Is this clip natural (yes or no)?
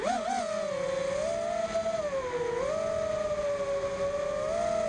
yes